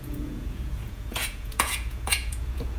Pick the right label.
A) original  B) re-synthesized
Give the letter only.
B